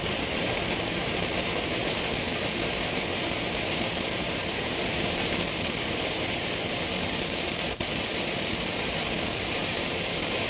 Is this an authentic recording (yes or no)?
no